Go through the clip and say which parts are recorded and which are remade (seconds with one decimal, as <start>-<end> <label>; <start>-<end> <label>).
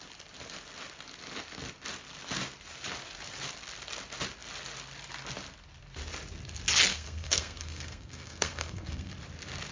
0.0-6.9 recorded; 6.9-9.1 remade; 9.1-9.7 recorded